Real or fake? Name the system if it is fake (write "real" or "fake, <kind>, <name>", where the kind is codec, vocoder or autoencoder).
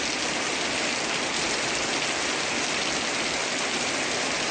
real